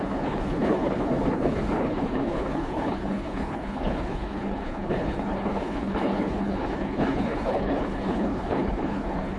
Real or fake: fake